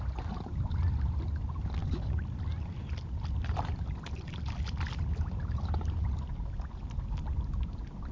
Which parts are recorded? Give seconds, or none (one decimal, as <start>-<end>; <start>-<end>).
0.0-8.1